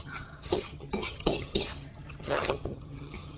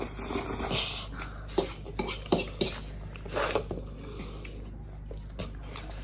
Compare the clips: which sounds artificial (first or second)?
first